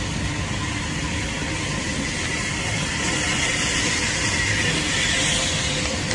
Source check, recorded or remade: recorded